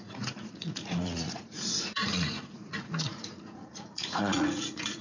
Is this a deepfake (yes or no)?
yes